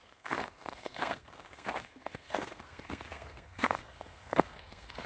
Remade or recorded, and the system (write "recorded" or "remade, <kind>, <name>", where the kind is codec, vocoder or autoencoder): remade, codec, SNAC